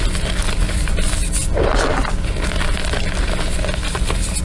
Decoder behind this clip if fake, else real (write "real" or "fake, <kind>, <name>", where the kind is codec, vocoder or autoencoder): real